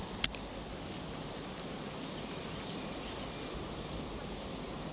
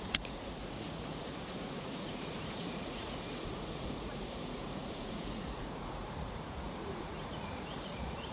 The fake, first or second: second